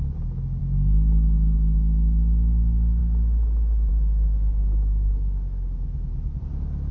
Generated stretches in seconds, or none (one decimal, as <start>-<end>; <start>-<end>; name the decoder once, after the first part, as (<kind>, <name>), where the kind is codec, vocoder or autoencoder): none